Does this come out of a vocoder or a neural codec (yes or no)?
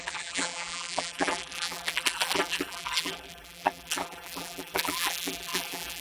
yes